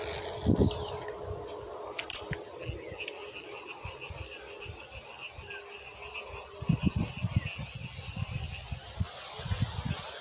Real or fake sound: real